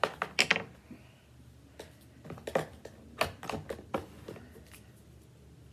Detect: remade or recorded recorded